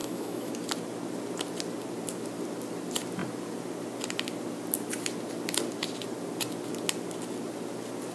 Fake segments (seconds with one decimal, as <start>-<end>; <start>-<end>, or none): 0.0-0.5